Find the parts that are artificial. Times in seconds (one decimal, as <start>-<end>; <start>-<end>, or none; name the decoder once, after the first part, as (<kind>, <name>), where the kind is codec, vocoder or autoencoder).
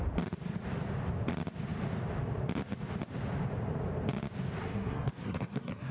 4.6-5.9 (codec, SNAC)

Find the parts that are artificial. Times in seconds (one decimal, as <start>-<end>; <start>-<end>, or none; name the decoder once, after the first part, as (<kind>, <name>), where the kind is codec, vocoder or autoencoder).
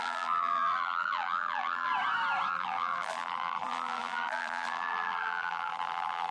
0.0-1.9 (vocoder, BigVGAN v2); 2.5-6.3